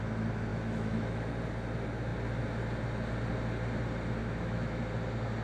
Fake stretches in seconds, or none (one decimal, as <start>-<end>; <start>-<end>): 0.5-1.3; 4.2-4.8